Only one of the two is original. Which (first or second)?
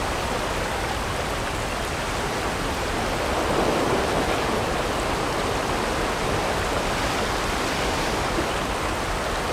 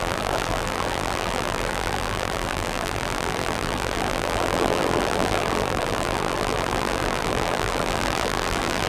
first